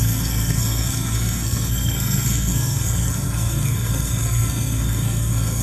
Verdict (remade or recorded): remade